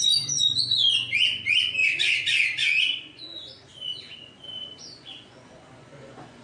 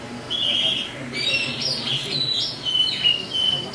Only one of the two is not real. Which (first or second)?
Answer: first